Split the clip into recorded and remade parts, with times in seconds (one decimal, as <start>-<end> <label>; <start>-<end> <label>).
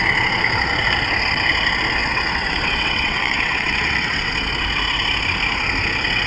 0.0-2.0 recorded; 2.0-4.3 remade; 4.3-6.3 recorded